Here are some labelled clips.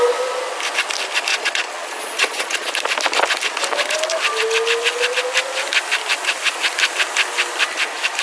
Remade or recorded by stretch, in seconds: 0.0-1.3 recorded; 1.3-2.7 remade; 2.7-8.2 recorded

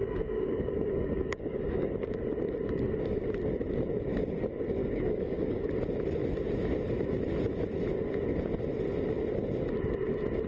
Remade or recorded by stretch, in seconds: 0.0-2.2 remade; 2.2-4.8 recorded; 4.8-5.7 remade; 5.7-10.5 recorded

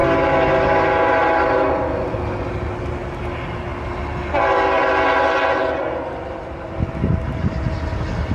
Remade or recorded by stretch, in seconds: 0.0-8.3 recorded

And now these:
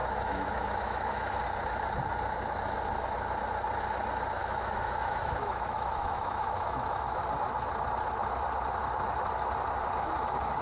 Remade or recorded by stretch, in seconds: 0.0-1.4 remade; 1.4-4.4 recorded; 4.4-7.2 remade; 7.2-10.6 recorded

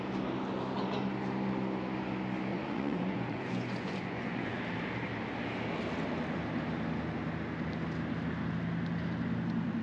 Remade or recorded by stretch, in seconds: 0.0-2.5 recorded; 2.5-4.6 remade; 4.6-9.8 recorded

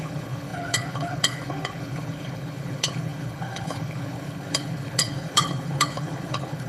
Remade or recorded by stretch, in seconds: 0.0-6.7 remade